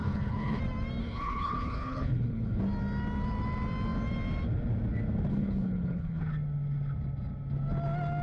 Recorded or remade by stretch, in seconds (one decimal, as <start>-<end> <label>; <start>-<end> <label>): 0.0-0.6 remade; 0.6-1.0 recorded; 1.0-2.6 remade; 2.6-5.3 recorded; 5.3-6.2 remade; 6.2-8.2 recorded